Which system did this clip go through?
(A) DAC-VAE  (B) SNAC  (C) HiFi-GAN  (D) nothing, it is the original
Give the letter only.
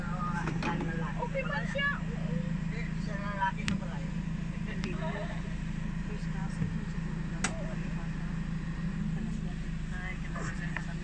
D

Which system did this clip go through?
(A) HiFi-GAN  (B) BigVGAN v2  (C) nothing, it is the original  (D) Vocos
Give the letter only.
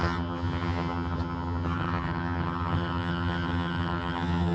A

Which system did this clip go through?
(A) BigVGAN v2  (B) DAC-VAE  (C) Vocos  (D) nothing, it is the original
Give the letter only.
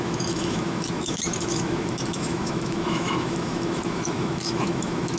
B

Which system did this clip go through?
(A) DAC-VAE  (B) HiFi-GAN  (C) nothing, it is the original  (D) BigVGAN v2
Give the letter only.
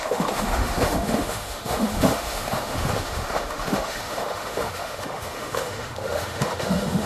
A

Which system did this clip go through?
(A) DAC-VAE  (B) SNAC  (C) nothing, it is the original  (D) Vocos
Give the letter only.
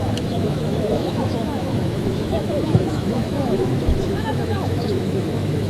A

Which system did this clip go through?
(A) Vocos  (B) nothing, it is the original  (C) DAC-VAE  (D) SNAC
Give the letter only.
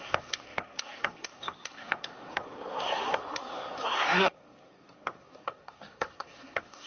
D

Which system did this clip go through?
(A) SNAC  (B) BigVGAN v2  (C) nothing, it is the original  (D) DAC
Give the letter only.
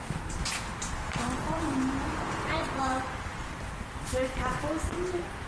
C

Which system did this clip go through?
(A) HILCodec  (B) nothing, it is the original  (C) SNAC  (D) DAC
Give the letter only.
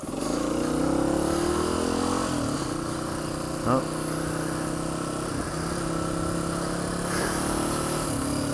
B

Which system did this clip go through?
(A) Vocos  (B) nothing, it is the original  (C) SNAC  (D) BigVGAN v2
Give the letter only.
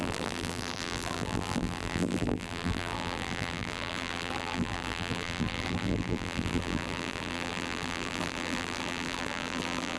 D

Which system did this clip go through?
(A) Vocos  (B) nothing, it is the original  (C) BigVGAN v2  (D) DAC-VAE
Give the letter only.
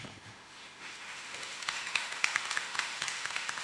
D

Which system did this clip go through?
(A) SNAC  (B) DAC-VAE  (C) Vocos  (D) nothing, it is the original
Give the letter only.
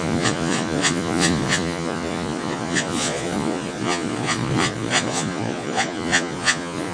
C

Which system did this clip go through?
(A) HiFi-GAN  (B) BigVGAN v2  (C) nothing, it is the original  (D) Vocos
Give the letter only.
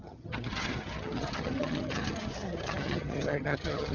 A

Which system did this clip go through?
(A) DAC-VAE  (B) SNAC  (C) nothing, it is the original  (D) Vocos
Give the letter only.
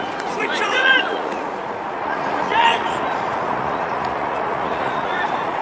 D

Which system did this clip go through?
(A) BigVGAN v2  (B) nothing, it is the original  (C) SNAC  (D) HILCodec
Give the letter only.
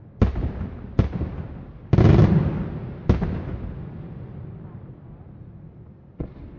B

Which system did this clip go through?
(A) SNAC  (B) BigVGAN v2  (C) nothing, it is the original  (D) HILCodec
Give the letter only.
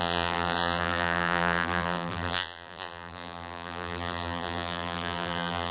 B